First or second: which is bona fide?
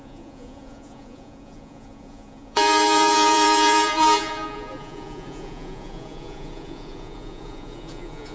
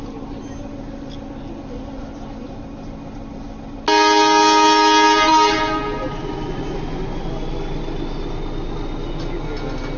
second